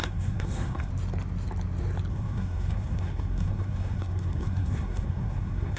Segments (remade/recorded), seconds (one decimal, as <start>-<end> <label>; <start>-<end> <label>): 0.0-0.9 remade; 0.9-2.1 recorded; 2.1-5.8 remade